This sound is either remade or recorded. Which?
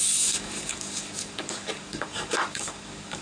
remade